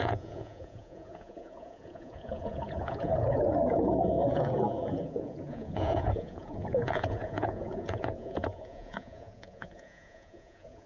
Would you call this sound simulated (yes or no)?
yes